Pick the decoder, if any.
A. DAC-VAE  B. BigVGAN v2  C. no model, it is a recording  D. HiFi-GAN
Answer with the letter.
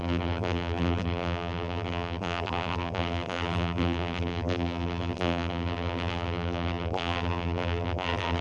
B